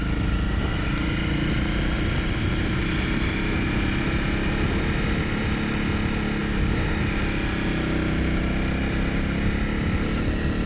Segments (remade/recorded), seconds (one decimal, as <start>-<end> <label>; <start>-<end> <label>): 0.0-10.7 recorded